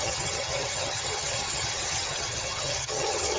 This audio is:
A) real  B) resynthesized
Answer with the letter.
B